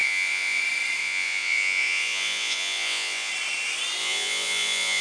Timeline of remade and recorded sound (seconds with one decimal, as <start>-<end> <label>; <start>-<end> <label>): 0.0-0.6 remade; 0.6-1.0 recorded; 1.0-3.3 remade; 3.3-4.0 recorded; 4.0-5.0 remade